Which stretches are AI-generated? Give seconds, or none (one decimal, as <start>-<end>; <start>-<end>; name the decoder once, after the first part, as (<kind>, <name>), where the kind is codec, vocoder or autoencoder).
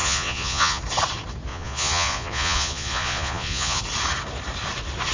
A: 0.0-0.8 (vocoder, Vocos); 1.5-3.8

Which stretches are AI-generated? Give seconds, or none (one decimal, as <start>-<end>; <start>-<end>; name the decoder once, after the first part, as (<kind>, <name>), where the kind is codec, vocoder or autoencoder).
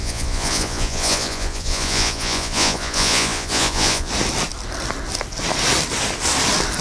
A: 0.0-4.1 (vocoder, Vocos)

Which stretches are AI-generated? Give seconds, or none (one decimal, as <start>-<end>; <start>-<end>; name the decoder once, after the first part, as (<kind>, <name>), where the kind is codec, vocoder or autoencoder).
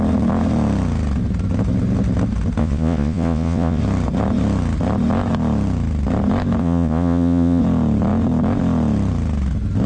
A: 2.6-3.8 (vocoder, Vocos); 6.6-7.6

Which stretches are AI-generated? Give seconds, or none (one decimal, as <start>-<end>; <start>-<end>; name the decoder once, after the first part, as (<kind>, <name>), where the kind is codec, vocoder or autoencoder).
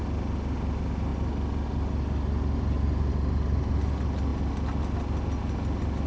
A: none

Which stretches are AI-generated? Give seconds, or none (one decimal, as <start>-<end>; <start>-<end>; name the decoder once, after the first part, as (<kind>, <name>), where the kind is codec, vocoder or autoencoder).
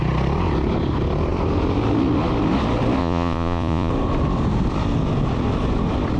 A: 3.0-3.9 (vocoder, Vocos)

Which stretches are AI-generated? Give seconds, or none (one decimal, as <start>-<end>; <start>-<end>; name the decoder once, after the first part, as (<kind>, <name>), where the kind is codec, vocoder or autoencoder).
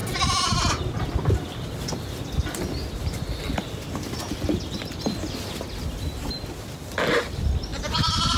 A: none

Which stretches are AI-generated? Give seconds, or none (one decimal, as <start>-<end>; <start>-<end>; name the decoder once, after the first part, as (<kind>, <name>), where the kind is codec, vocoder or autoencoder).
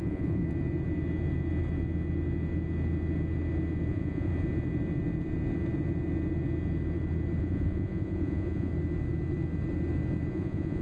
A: 0.0-0.4 (vocoder, Vocos); 3.9-4.3; 7.4-8.7; 10.3-10.8